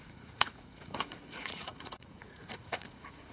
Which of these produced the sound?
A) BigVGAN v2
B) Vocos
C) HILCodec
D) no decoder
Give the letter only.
B